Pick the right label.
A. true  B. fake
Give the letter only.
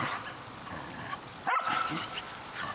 A